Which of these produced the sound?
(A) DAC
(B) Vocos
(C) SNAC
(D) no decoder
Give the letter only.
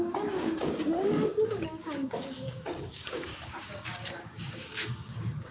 A